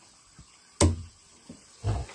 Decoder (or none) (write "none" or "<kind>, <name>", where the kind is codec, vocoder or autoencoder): none